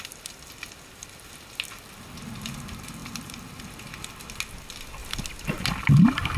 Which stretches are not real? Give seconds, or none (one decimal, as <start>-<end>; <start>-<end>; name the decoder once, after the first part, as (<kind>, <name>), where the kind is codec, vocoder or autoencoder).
none